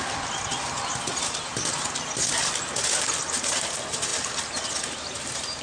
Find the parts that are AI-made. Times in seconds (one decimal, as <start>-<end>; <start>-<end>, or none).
none